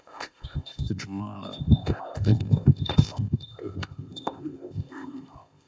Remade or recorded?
remade